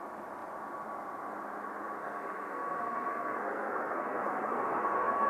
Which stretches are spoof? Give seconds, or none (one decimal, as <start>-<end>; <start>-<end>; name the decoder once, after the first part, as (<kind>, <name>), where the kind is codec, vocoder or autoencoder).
2.0-5.3 (codec, SNAC)